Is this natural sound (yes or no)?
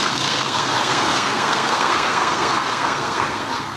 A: no